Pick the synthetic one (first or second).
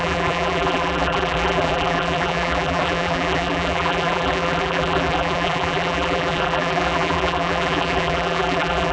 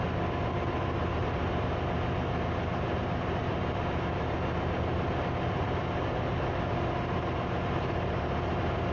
first